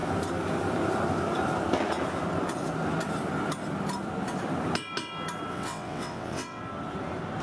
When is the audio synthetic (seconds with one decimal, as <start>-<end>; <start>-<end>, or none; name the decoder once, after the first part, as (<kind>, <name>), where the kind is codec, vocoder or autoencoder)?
5.5-6.6 (vocoder, WaveNeXt)